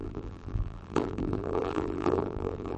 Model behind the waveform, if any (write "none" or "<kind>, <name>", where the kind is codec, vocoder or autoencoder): vocoder, BigVGAN v2